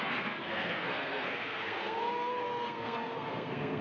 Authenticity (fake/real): fake